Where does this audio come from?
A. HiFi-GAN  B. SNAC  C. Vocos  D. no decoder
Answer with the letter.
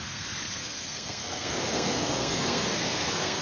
B